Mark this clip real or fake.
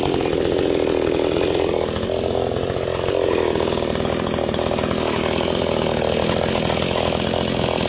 real